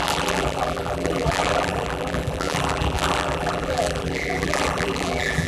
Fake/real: fake